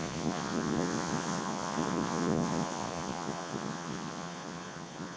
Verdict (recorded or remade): remade